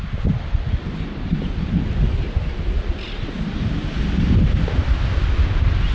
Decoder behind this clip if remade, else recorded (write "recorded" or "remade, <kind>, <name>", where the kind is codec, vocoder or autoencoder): recorded